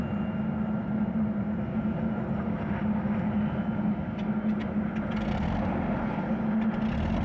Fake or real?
real